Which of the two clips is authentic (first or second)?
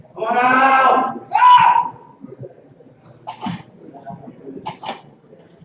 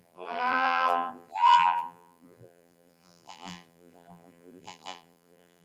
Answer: first